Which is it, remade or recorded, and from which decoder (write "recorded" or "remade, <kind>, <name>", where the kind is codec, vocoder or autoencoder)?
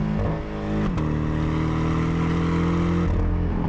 recorded